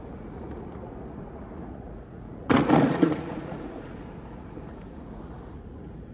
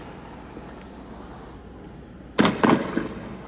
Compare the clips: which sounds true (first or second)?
second